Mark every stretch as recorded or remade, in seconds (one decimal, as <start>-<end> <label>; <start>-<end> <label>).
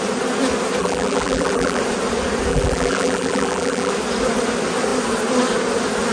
0.0-0.8 recorded; 0.8-1.8 remade; 1.8-2.5 recorded; 2.5-3.9 remade; 3.9-6.1 recorded